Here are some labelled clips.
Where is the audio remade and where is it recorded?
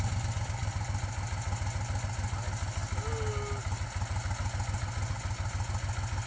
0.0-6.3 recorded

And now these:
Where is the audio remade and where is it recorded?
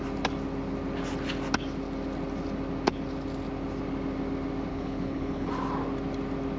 0.0-4.7 recorded; 4.7-5.5 remade; 5.5-6.6 recorded